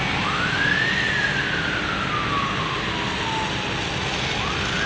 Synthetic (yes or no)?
no